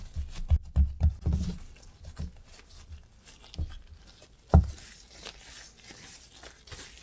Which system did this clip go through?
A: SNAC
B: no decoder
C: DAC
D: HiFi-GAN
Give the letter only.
B